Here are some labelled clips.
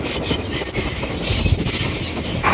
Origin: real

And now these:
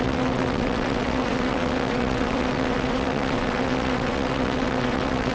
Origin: fake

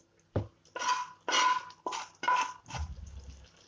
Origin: real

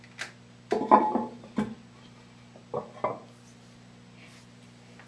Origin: real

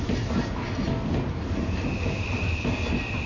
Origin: real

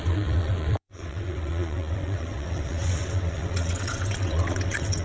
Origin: fake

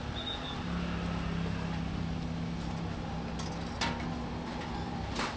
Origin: real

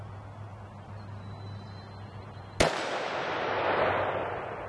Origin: real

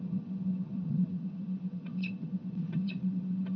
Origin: fake